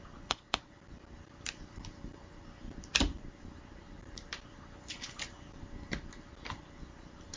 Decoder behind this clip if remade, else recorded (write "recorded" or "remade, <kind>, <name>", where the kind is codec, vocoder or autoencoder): remade, vocoder, BigVGAN v2